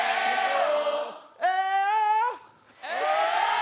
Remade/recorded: recorded